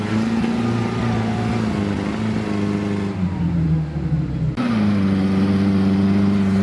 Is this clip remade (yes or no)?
no